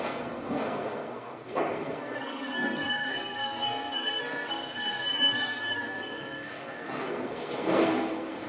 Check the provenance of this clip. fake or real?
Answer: fake